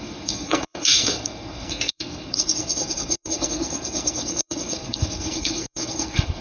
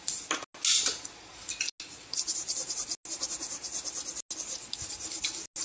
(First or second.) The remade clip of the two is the first